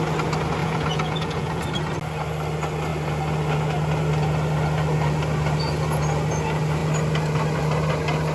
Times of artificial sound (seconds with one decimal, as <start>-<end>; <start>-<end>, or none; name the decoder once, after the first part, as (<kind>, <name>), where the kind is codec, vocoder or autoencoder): 0.6-1.6 (vocoder, Vocos)